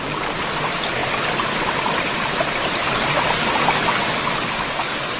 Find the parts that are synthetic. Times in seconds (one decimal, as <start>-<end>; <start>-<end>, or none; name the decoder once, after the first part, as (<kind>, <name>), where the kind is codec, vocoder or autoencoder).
none